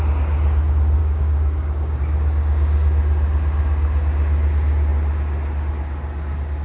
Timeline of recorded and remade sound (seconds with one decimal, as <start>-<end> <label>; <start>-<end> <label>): 0.0-1.0 recorded; 1.0-2.0 remade; 2.0-6.6 recorded